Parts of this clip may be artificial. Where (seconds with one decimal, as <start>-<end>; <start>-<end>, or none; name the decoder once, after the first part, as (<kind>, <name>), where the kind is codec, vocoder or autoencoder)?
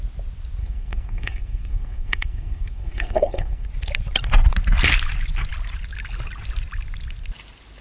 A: 0.6-3.7 (codec, SNAC)